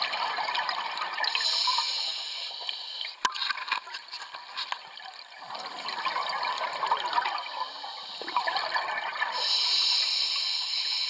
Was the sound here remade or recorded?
recorded